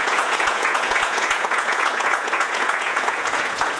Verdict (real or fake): fake